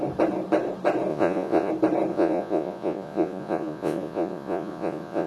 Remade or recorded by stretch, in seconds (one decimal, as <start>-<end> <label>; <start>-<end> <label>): 0.0-1.1 recorded; 1.1-1.7 remade; 1.7-2.1 recorded; 2.1-5.3 remade